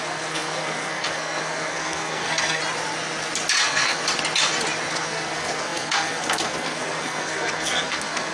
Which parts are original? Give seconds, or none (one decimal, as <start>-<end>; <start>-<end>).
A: 2.6-3.6; 4.0-4.9